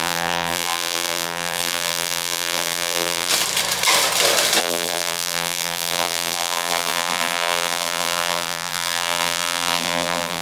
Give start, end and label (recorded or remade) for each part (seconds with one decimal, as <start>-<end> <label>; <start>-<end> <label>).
0.0-3.3 remade; 3.3-4.6 recorded; 4.6-10.4 remade

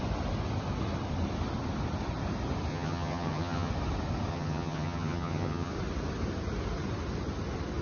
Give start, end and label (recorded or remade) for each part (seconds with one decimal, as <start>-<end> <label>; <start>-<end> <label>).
0.0-2.7 recorded; 2.7-3.7 remade; 3.7-4.3 recorded; 4.3-5.7 remade; 5.7-7.8 recorded

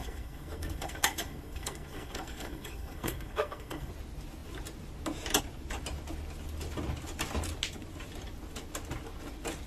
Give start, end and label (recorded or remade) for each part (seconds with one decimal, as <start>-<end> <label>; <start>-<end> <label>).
0.0-3.9 remade; 3.9-9.7 recorded